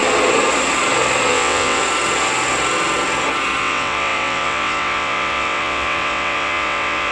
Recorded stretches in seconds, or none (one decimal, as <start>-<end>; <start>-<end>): 0.0-1.3; 1.8-3.6